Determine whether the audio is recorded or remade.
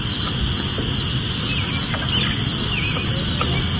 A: recorded